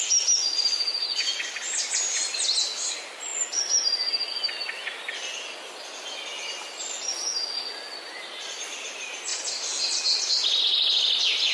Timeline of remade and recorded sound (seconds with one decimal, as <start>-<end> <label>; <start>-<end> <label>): 0.0-11.5 recorded